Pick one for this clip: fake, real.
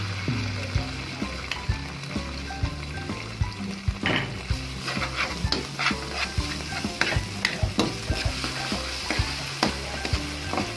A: real